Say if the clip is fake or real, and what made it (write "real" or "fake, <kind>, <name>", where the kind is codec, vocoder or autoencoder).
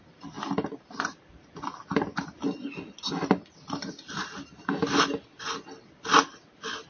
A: real